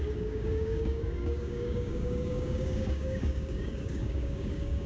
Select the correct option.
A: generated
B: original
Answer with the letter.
A